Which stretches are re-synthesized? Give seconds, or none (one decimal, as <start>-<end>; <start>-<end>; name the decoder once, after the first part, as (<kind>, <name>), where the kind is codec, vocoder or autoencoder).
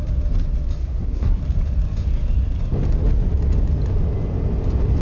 0.8-1.4 (codec, SNAC)